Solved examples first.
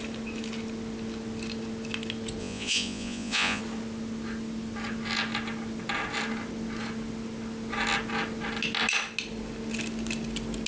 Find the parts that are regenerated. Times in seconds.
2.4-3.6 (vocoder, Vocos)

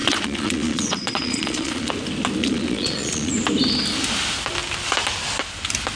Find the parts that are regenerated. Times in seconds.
0.0-1.9 (vocoder, Vocos); 2.4-3.3

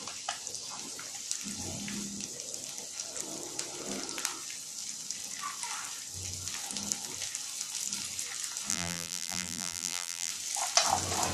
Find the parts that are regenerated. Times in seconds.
8.7-10.3 (vocoder, BigVGAN v2)

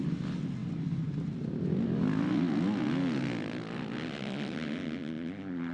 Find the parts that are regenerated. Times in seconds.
none